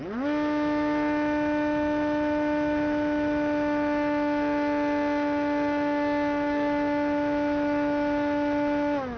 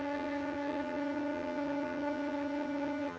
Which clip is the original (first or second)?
first